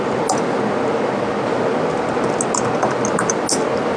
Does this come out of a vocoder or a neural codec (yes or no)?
no